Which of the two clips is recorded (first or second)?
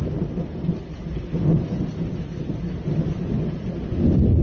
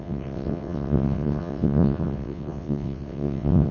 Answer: first